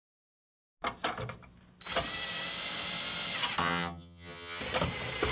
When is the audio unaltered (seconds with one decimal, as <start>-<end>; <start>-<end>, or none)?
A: 0.0-3.6; 4.6-5.3